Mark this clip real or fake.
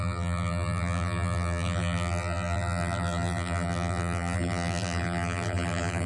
fake